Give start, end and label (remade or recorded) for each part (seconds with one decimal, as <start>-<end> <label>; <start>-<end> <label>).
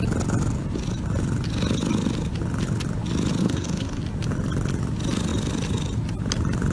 0.0-3.4 recorded; 3.4-4.0 remade; 4.0-6.7 recorded